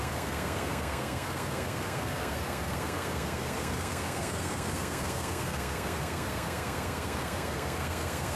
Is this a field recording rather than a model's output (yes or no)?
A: no